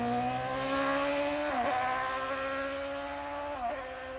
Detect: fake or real real